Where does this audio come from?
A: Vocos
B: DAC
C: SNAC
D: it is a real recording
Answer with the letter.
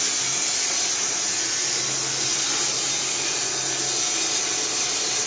D